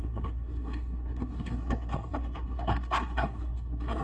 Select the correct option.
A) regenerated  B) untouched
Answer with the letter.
A